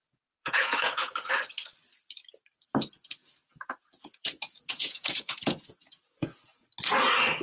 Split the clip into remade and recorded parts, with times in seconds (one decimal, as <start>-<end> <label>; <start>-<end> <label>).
0.0-0.4 recorded; 0.4-1.1 remade; 1.1-3.2 recorded; 3.2-6.7 remade; 6.7-7.4 recorded